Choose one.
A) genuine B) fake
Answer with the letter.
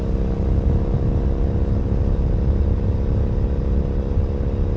A